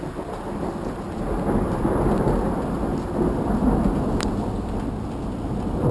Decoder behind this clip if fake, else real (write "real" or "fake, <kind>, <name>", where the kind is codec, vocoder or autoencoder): real